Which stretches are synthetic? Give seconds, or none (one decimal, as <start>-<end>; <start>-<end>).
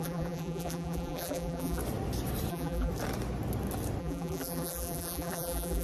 0.0-1.8; 2.5-2.9; 4.0-5.8